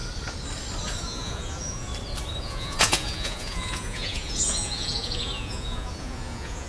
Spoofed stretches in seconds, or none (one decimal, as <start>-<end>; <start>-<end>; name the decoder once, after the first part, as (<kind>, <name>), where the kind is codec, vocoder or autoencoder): 1.0-1.9 (vocoder, Vocos); 2.4-6.7

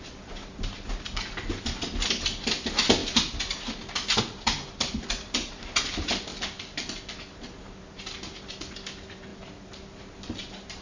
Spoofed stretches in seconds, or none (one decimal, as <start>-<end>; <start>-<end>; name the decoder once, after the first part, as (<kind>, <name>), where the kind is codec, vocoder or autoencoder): none